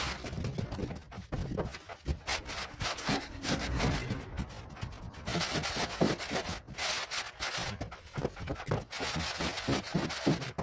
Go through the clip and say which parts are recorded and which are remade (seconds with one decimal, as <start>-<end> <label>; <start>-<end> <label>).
0.0-2.7 recorded; 2.7-3.8 remade; 3.8-10.6 recorded